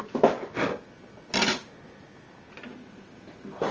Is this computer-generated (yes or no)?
no